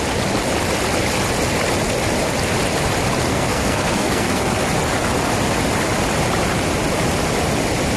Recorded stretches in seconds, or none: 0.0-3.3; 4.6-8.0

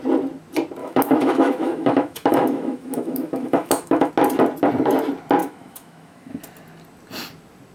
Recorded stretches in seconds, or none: 0.0-0.8; 4.1-5.4; 6.4-7.7

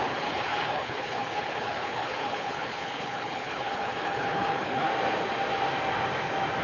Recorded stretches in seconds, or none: 4.9-6.6